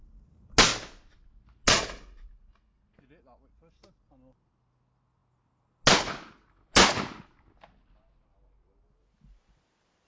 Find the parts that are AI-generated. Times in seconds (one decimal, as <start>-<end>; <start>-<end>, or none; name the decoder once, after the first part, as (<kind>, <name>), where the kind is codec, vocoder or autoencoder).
none